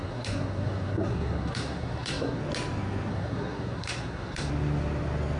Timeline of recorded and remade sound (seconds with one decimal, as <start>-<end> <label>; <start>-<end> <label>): 0.0-2.4 remade; 2.4-3.1 recorded; 3.1-4.5 remade; 4.5-5.4 recorded